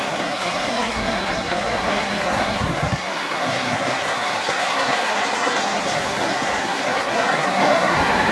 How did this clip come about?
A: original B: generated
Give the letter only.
B